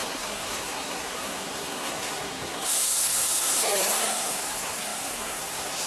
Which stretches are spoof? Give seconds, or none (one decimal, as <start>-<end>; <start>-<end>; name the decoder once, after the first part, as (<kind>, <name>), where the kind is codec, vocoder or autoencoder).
0.0-5.9 (codec, SNAC)